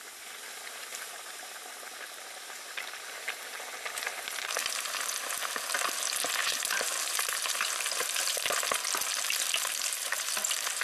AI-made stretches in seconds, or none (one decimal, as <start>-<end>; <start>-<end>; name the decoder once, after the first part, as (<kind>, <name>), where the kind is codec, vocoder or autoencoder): 0.9-3.6 (vocoder, BigVGAN v2); 6.4-8.3